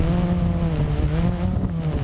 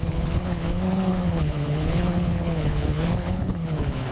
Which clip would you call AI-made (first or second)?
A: second